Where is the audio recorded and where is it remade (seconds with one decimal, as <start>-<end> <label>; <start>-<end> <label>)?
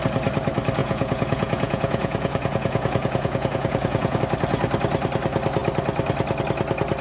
0.0-0.8 recorded; 0.8-4.2 remade; 4.2-7.0 recorded